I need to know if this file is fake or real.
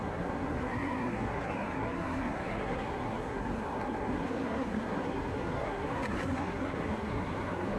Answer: fake